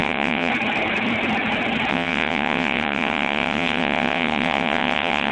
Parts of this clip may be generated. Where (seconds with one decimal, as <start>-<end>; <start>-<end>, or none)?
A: 0.0-0.5; 1.9-5.3